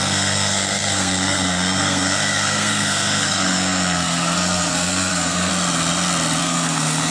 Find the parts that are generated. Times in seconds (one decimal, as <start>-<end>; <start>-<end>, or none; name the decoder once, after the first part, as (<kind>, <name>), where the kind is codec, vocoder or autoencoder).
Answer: 0.0-5.5 (codec, SNAC); 6.4-7.1